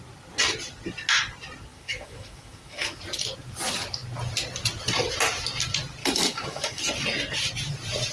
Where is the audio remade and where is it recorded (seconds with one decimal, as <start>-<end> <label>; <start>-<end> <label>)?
0.0-1.7 recorded; 1.7-3.0 remade; 3.0-6.0 recorded; 6.0-6.8 remade; 6.8-8.1 recorded

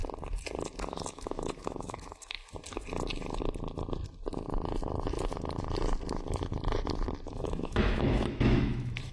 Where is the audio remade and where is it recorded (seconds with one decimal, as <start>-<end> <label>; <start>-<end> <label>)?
0.0-1.1 recorded; 1.1-2.4 remade; 2.4-7.3 recorded; 7.3-9.1 remade

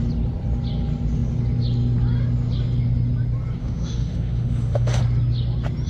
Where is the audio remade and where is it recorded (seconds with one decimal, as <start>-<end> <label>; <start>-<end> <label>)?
0.0-3.6 recorded; 3.6-5.0 remade; 5.0-5.9 recorded

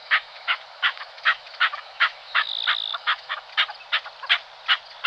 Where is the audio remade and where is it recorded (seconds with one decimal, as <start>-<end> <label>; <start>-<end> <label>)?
0.0-2.5 remade; 2.5-2.9 recorded; 2.9-3.5 remade; 3.5-5.1 recorded

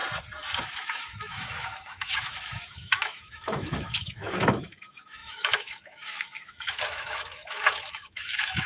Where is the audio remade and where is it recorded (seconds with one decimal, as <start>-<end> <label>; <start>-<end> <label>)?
0.0-0.6 recorded; 0.6-8.7 remade

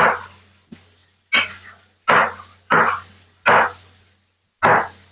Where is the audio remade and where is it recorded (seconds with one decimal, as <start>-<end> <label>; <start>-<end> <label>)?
0.0-5.1 recorded

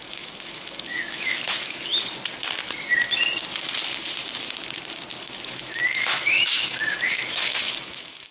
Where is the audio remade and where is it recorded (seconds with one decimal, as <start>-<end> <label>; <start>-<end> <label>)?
0.0-1.9 remade; 1.9-5.2 recorded; 5.2-8.3 remade